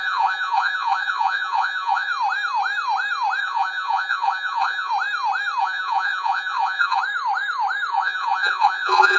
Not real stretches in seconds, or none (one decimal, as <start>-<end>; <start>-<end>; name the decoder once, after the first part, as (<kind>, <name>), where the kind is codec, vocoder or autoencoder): 0.0-2.1 (vocoder, Vocos); 3.4-4.9; 5.6-7.0; 7.9-9.2